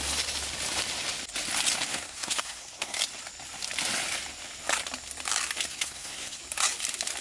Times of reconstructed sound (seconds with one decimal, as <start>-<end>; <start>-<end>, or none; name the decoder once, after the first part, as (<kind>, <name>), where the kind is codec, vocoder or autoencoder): 1.9-3.0 (codec, SNAC); 5.7-6.4